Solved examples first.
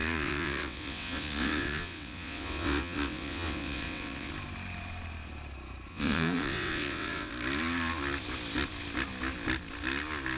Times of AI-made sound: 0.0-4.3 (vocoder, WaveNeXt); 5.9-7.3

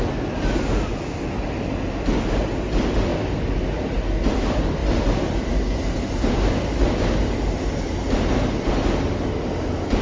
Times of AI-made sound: none

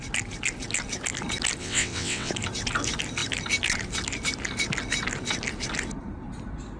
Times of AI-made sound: 1.6-2.3 (vocoder, WaveNeXt)